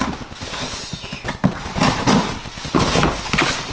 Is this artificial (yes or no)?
no